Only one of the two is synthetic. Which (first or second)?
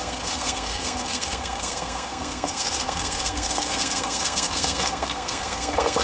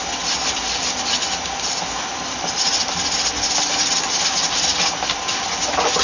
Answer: first